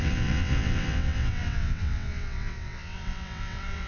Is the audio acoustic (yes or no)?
no